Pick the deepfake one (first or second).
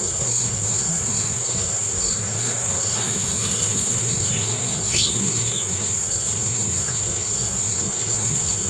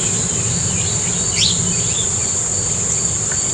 first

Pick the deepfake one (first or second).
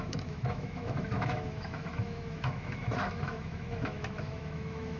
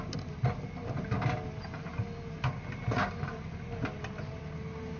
first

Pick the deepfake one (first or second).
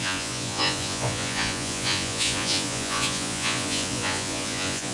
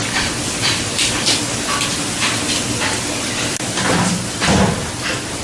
first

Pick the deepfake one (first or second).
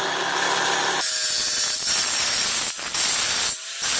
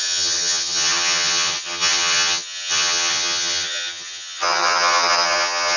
second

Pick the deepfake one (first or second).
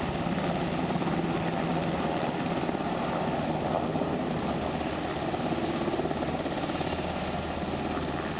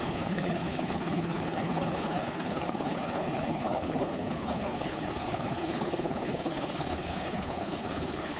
second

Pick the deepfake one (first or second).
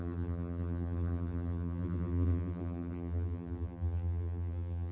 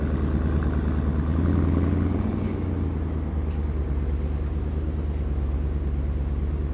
first